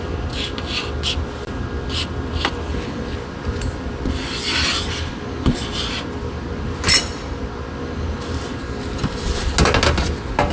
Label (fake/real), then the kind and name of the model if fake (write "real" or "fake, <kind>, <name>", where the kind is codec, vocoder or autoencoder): real